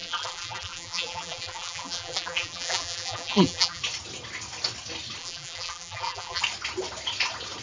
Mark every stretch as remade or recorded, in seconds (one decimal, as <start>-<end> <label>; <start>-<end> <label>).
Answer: 0.0-3.8 remade; 3.8-5.2 recorded; 5.2-6.4 remade; 6.4-7.6 recorded